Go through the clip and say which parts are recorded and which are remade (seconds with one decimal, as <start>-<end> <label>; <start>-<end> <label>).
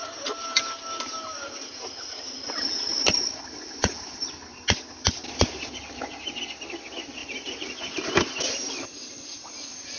0.0-2.9 recorded; 2.9-4.3 remade; 4.3-7.2 recorded; 7.2-8.1 remade; 8.1-10.0 recorded